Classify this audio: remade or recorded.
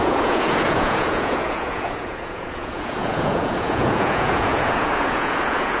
remade